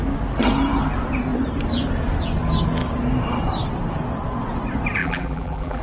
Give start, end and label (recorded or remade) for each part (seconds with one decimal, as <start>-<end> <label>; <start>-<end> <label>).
0.0-5.0 recorded; 5.0-5.8 remade